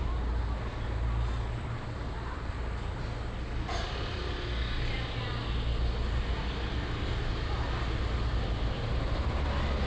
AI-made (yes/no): no